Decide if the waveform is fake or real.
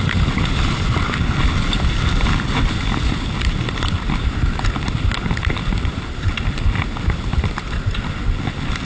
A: real